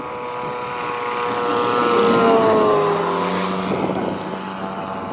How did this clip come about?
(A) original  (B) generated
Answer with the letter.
A